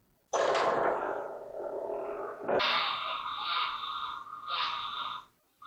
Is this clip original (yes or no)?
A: yes